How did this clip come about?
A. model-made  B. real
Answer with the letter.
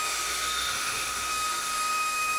A